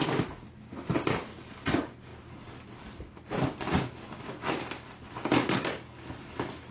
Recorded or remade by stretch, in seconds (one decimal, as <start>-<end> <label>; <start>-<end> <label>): 0.0-6.7 recorded